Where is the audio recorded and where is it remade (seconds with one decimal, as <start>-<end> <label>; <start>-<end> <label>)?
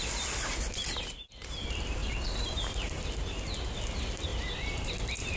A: 0.0-2.0 recorded; 2.0-3.4 remade; 3.4-4.3 recorded; 4.3-4.9 remade; 4.9-5.4 recorded